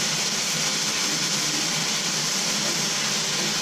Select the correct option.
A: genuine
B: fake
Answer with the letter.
A